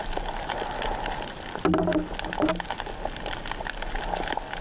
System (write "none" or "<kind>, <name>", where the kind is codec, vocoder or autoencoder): none